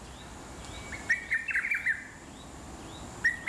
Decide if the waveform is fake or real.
real